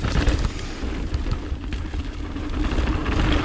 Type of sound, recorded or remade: recorded